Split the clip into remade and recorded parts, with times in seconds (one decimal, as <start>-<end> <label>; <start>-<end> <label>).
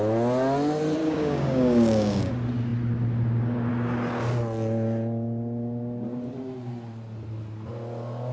0.0-1.0 recorded; 1.0-2.3 remade; 2.3-8.3 recorded